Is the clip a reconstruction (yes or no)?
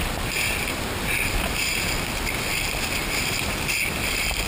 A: no